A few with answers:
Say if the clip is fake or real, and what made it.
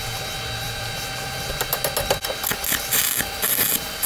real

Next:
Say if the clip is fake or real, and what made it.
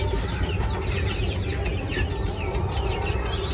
real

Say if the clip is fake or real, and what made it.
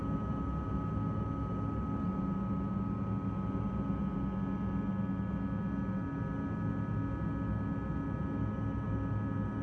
real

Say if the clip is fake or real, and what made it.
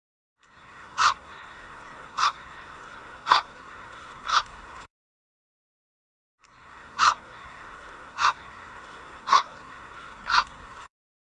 fake, codec, SNAC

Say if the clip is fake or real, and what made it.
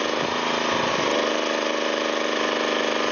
real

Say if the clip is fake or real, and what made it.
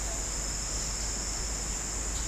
real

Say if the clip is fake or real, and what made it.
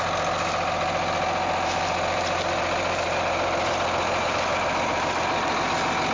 real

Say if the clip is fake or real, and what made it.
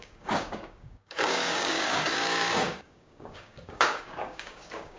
fake, codec, DAC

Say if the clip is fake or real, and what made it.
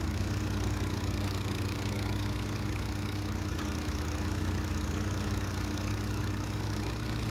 fake, codec, DAC